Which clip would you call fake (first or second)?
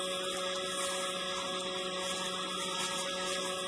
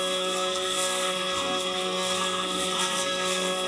second